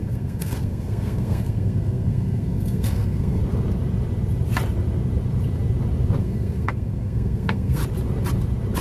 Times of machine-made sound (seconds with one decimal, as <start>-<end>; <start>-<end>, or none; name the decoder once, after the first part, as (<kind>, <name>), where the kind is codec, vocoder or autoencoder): 0.0-3.4 (codec, SNAC); 6.2-7.8